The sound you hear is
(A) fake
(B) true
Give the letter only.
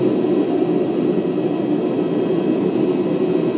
B